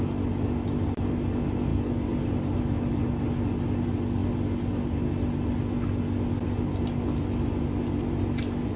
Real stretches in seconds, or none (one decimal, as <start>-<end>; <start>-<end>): 0.0-8.8